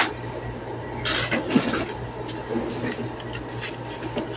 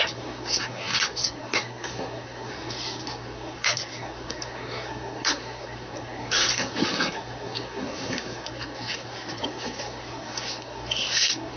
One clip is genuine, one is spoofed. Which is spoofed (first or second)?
second